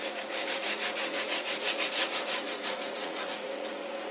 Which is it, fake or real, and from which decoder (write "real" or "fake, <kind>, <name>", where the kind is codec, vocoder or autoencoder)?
fake, vocoder, Vocos